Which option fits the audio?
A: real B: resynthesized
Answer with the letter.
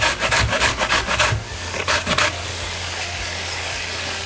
B